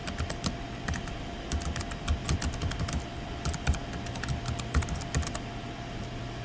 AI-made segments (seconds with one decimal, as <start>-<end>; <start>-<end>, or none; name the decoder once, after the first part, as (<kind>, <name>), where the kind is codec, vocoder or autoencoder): none